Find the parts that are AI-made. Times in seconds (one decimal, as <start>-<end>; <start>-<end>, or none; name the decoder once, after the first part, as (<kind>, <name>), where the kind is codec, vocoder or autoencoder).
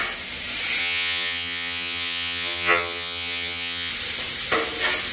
0.8-3.9 (vocoder, HiFi-GAN)